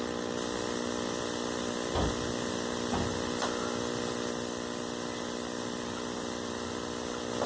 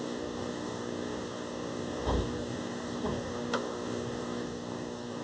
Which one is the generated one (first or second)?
second